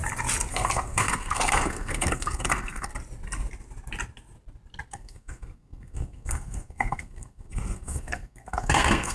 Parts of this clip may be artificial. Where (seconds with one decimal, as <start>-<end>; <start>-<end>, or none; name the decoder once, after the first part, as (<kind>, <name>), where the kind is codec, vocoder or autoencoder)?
0.5-2.9 (codec, SNAC); 4.9-9.1